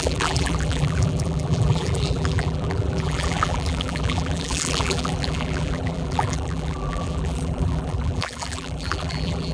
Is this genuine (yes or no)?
no